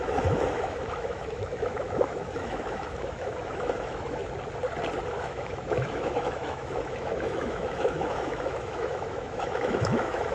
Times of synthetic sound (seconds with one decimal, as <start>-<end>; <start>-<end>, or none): 0.0-4.2; 5.2-10.3